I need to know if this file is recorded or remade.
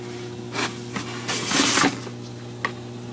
recorded